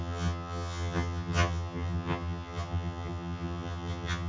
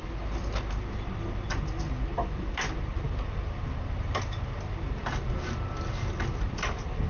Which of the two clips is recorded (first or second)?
second